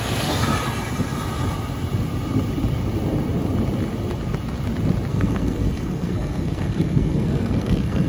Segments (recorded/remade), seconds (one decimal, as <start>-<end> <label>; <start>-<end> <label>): 0.0-0.5 remade; 0.5-5.1 recorded; 5.1-8.1 remade